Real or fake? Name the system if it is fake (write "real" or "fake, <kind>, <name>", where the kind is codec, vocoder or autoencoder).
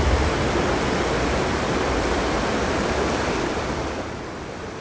real